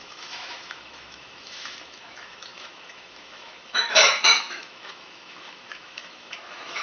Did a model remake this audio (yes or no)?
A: yes